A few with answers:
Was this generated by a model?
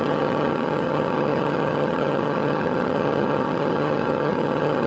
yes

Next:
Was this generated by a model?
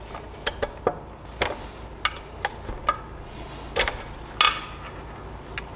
no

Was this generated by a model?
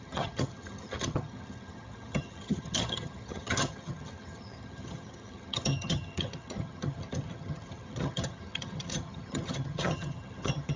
yes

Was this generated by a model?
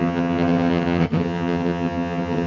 yes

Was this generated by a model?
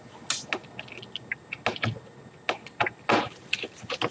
no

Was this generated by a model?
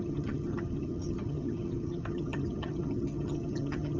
yes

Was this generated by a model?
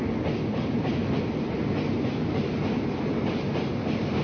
no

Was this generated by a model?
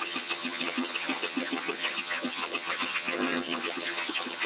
yes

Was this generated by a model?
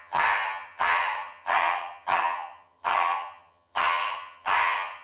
yes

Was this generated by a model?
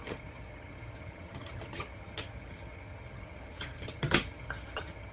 yes